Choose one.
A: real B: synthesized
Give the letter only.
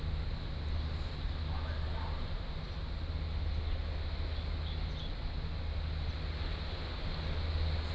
A